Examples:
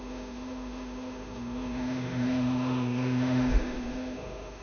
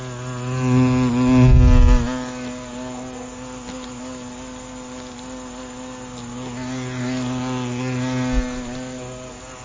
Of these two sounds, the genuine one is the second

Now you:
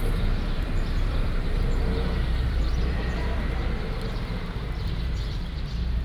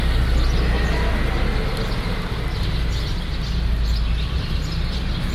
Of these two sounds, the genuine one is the second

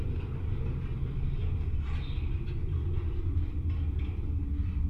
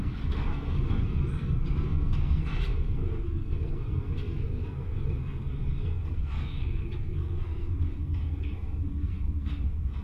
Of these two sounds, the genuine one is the first